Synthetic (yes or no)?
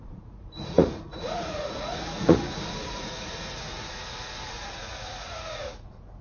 yes